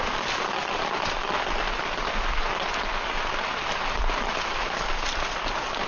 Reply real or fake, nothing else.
real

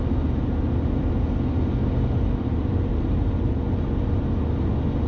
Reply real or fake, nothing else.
real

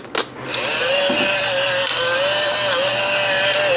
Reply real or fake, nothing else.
real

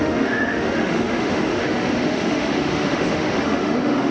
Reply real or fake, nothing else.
fake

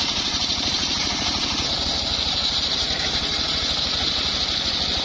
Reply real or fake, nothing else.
real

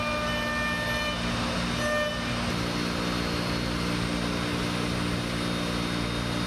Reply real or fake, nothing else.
real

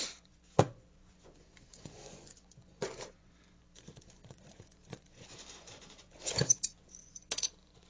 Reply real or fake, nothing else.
fake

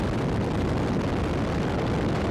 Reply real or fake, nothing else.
real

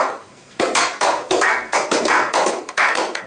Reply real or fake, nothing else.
fake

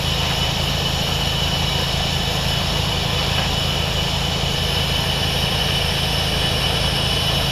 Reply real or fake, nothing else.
real